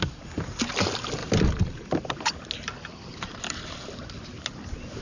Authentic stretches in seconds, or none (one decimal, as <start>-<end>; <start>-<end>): 0.0-5.0